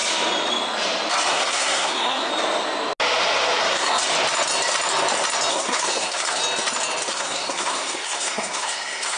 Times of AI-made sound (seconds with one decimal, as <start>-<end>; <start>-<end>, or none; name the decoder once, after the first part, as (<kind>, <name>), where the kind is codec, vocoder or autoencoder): 1.3-2.3 (codec, SNAC); 3.6-4.0; 5.5-6.4; 7.1-9.2